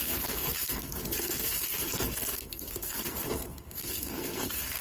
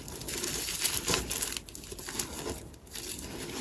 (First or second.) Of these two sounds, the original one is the second